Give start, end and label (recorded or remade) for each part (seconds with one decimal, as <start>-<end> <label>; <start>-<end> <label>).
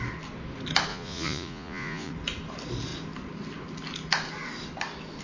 0.0-0.9 recorded; 0.9-2.1 remade; 2.1-5.2 recorded